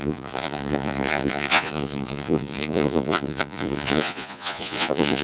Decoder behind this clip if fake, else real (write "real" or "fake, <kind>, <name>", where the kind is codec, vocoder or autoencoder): fake, vocoder, Vocos